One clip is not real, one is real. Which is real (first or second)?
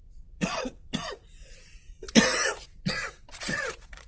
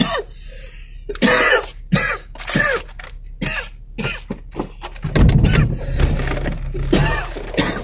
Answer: second